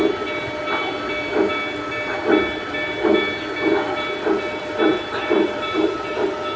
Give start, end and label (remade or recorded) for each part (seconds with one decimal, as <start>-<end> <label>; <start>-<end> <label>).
0.0-4.9 recorded; 4.9-6.6 remade